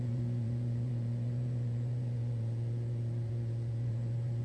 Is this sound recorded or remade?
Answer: remade